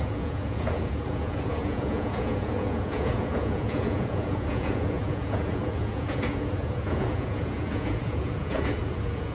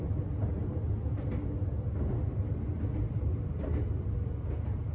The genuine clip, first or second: second